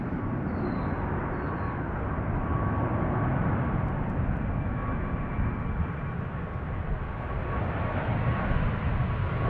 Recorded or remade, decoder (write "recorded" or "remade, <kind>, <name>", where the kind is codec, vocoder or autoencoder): recorded